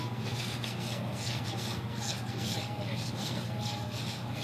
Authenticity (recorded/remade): remade